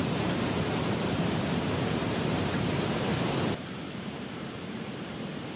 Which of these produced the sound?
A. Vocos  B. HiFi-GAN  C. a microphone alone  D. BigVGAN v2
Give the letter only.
D